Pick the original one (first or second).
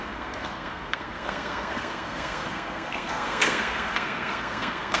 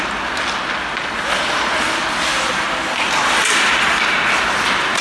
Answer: second